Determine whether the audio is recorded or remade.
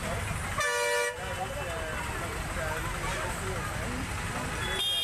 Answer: recorded